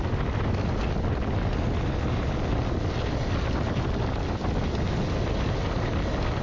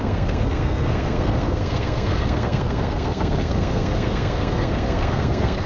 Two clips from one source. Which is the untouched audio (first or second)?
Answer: first